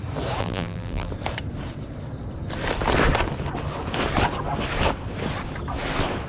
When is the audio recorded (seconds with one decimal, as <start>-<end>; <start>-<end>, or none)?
0.0-0.4; 1.1-6.3